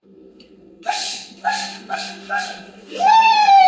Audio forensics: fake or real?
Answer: fake